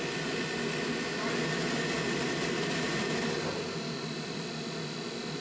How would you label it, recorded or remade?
recorded